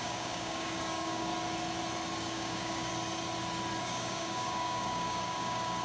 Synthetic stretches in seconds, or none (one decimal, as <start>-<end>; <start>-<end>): 0.0-1.3; 2.2-2.9; 3.8-5.8